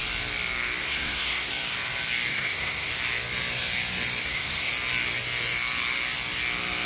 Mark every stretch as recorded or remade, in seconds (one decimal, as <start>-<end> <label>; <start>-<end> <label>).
0.0-0.8 recorded; 0.8-1.5 remade; 1.5-2.3 recorded; 2.3-2.9 remade; 2.9-4.2 recorded; 4.2-4.7 remade; 4.7-6.9 recorded